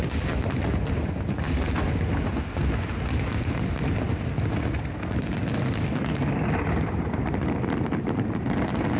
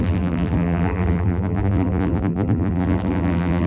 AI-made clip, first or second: second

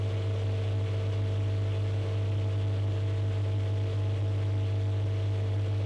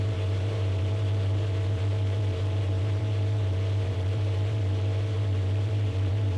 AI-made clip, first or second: second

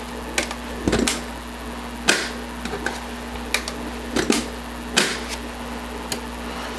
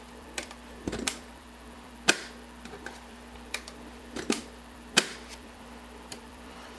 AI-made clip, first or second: second